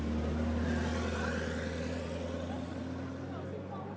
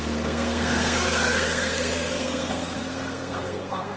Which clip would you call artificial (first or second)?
second